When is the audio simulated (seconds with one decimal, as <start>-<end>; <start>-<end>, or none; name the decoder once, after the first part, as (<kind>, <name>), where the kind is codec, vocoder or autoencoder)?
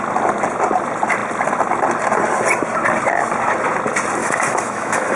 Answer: 4.2-5.2 (autoencoder, DAC-VAE)